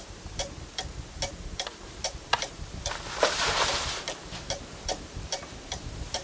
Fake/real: fake